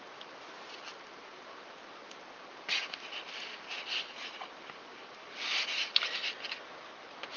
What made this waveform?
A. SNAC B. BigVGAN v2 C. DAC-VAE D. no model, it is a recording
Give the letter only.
D